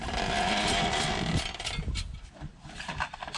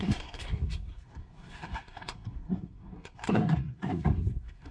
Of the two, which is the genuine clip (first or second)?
first